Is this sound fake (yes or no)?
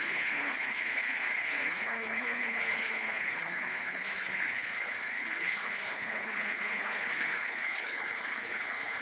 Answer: yes